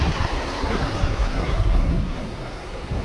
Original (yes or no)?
no